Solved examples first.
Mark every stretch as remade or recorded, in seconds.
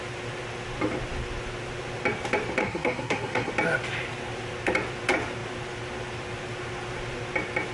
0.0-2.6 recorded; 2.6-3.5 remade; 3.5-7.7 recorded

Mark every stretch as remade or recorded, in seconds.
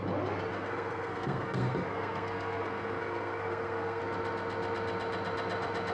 0.0-0.5 recorded; 0.5-4.0 remade; 4.0-5.9 recorded